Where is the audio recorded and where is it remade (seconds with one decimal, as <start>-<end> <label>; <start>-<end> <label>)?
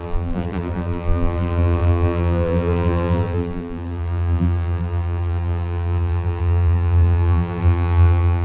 0.0-8.4 remade